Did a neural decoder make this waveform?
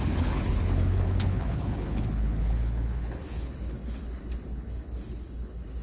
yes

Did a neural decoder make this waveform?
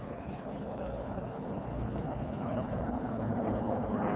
yes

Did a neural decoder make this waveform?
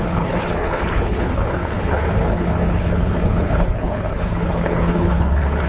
yes